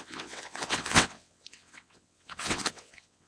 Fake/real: fake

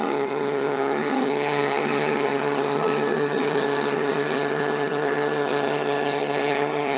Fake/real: fake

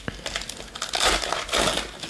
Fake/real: real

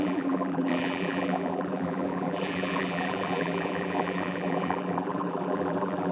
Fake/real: fake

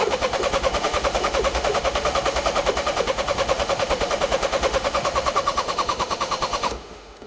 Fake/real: fake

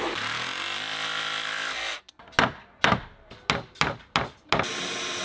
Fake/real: real